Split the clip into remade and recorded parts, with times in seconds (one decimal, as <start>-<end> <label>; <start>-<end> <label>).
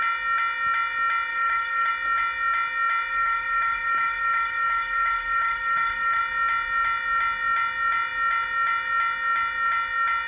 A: 0.0-1.3 recorded; 1.3-1.9 remade; 1.9-3.1 recorded; 3.1-6.2 remade; 6.2-10.3 recorded